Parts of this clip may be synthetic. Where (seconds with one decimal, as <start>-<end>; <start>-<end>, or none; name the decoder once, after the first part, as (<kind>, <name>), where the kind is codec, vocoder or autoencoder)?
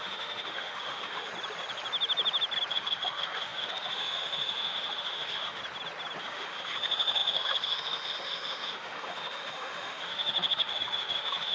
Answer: 0.0-1.3 (autoencoder, DAC-VAE); 2.7-5.6; 6.2-11.5